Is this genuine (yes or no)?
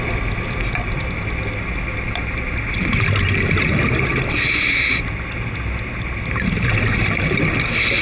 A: yes